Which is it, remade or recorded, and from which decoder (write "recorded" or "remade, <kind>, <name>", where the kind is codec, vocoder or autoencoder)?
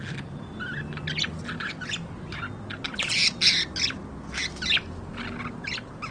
recorded